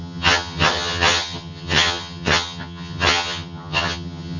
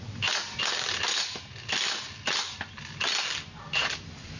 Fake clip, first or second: first